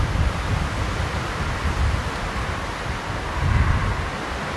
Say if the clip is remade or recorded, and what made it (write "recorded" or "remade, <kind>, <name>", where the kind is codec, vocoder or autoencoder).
recorded